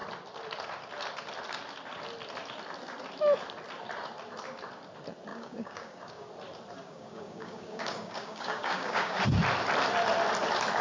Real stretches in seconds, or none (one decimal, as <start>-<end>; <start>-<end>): 0.0-5.3; 6.3-6.8; 9.2-10.8